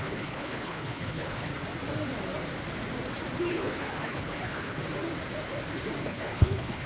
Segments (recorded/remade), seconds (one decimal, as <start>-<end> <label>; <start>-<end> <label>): 0.0-1.5 remade; 1.5-3.5 recorded; 3.5-4.8 remade; 4.8-6.0 recorded; 6.0-6.9 remade